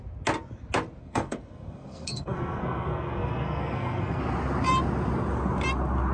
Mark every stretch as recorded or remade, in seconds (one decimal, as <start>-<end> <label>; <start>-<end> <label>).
0.0-1.0 recorded; 1.0-4.2 remade; 4.2-6.1 recorded